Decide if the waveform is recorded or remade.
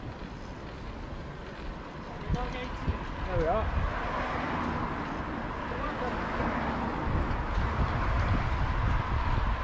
recorded